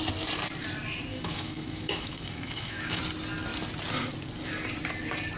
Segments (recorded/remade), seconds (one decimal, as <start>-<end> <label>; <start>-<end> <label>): 0.0-1.1 recorded; 1.1-3.0 remade; 3.0-5.4 recorded